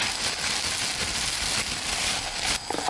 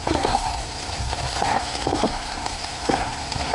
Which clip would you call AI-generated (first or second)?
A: second